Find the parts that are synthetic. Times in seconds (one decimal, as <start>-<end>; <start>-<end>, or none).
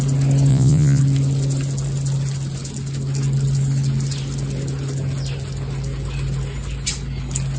0.5-1.0